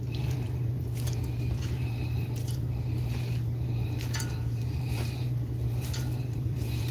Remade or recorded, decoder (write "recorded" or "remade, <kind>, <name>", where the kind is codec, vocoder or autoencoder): remade, vocoder, BigVGAN v2